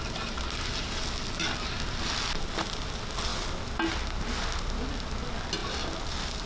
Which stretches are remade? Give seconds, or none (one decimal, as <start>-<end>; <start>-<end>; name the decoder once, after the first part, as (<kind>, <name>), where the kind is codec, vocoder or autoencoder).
none